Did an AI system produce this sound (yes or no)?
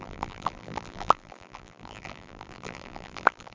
yes